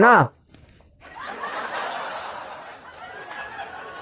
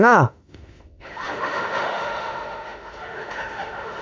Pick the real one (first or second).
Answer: first